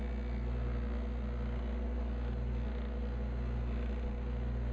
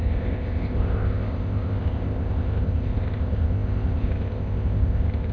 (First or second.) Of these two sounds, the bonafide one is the first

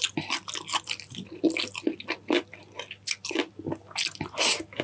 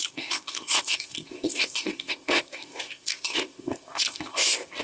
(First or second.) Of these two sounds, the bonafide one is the first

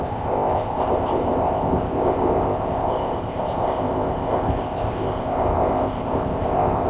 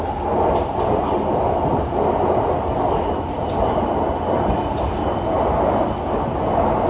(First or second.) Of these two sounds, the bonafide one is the second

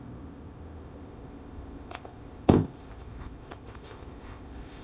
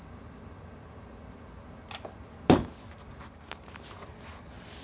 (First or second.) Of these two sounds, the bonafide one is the second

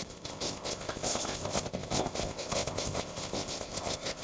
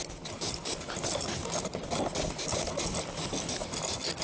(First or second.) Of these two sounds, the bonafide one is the second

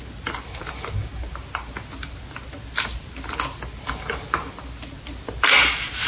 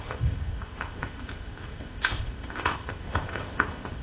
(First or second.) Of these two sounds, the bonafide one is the first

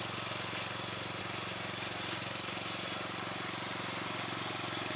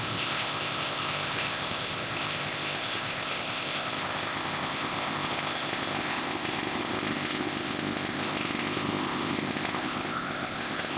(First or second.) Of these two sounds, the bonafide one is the first